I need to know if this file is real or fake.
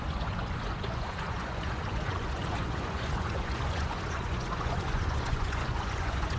fake